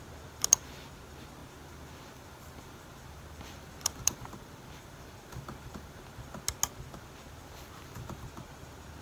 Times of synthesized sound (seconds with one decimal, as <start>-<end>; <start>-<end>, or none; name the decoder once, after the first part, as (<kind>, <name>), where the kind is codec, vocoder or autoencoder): 1.4-6.0 (vocoder, BigVGAN v2); 7.4-8.3